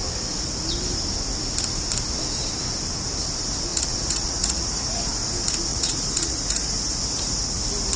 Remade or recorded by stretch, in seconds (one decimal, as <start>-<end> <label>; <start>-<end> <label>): 0.0-3.7 recorded; 3.7-5.0 remade; 5.0-5.7 recorded; 5.7-7.6 remade; 7.6-8.0 recorded